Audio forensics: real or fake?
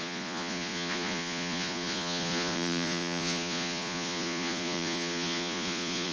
fake